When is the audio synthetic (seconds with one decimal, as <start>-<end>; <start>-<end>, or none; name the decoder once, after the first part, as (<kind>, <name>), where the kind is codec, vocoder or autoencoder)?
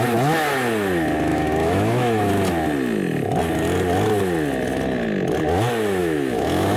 1.3-2.3 (autoencoder, DAC-VAE); 6.0-6.8